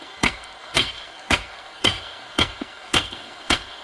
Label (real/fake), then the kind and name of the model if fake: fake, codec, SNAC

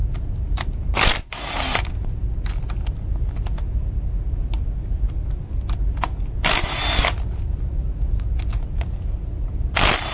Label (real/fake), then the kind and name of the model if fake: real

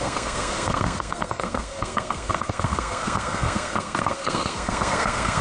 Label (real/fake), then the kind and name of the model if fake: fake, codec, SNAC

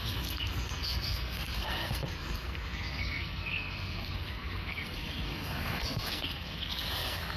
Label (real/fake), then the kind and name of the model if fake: fake, codec, SNAC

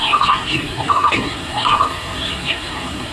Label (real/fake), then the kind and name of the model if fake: fake, codec, SNAC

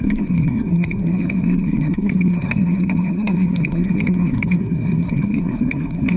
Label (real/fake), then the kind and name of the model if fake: fake, codec, SNAC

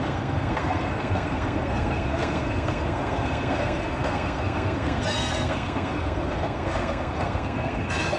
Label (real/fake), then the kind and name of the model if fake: fake, codec, SNAC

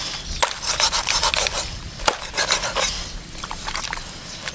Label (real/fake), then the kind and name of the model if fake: real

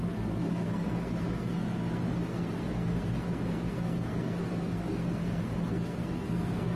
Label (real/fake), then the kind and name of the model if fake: fake, codec, SNAC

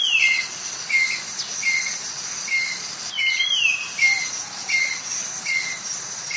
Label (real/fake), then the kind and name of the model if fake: real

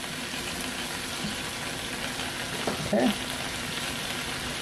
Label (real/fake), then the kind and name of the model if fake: real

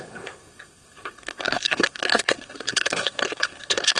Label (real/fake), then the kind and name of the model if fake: fake, codec, SNAC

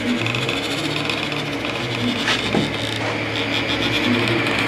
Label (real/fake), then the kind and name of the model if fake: real